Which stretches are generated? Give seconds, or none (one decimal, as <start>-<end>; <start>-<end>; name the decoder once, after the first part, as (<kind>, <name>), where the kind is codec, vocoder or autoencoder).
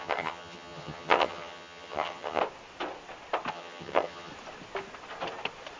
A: 0.0-2.4 (vocoder, HiFi-GAN); 3.5-4.3